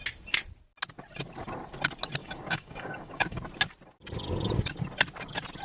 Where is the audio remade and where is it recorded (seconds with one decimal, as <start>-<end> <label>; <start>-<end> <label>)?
0.0-2.2 recorded; 2.2-3.4 remade; 3.4-5.6 recorded